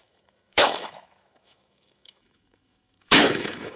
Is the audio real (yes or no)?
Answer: no